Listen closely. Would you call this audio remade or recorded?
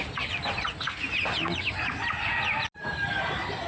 recorded